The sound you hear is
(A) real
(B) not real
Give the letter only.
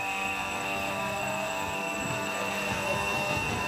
B